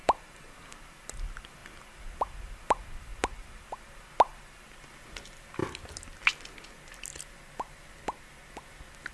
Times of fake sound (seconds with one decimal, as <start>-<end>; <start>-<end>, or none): 0.0-0.5